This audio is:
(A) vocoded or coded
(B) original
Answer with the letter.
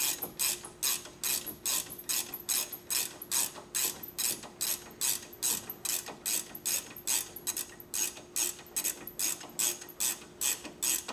B